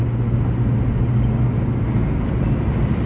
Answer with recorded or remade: recorded